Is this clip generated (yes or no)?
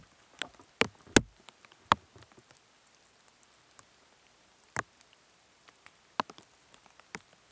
no